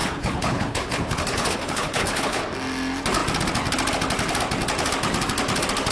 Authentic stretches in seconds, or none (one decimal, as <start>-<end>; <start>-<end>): 2.4-5.9